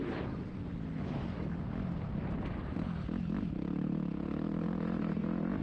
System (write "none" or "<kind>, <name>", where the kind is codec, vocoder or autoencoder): none